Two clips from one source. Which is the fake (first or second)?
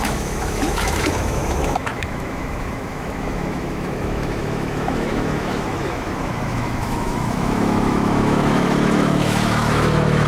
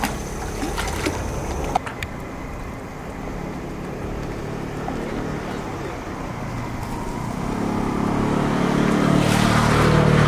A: first